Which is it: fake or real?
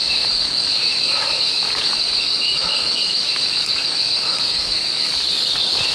fake